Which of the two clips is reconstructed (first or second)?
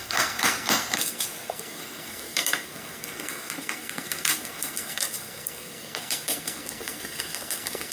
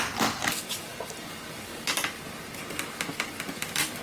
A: first